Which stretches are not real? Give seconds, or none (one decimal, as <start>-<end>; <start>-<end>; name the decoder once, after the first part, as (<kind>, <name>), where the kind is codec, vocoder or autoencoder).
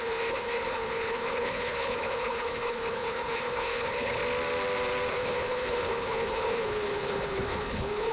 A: 0.0-4.2 (codec, HILCodec); 5.1-8.1